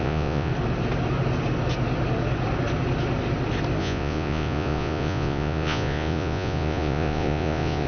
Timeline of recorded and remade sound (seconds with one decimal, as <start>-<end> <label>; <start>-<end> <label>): 0.0-0.5 remade; 0.5-3.8 recorded; 3.8-7.9 remade